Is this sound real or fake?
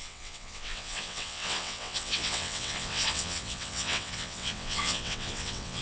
fake